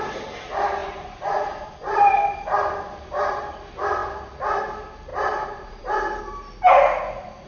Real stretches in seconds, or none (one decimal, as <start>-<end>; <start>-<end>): 0.0-0.8; 1.7-5.1; 6.2-7.5